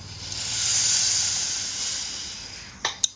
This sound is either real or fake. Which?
real